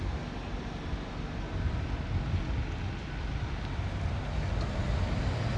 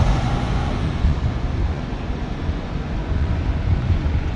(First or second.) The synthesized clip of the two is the second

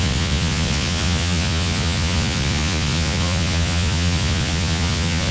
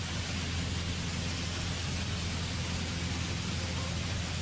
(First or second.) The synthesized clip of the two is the first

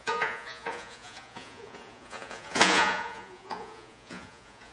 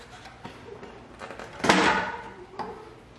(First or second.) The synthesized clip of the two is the first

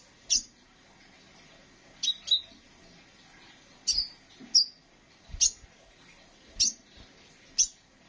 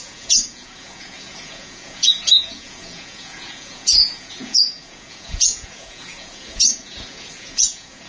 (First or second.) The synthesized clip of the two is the second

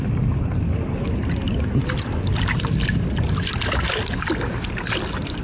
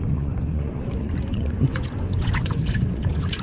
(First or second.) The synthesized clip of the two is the second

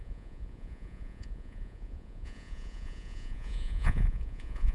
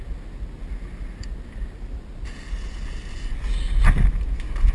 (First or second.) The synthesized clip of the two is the first